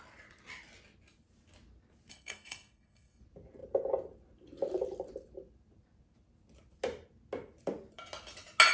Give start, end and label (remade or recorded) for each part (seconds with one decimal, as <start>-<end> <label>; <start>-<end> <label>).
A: 0.0-2.1 recorded; 2.1-3.2 remade; 3.2-8.7 recorded